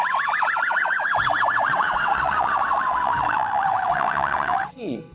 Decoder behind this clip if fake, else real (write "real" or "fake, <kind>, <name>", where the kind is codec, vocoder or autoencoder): fake, vocoder, WaveNeXt